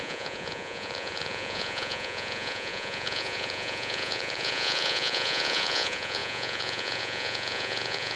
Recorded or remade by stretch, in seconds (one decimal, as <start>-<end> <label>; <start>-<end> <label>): 0.0-8.2 remade